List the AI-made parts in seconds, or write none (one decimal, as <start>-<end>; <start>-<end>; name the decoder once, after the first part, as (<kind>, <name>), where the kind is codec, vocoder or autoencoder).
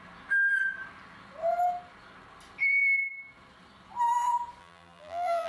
4.6-5.5 (vocoder, BigVGAN v2)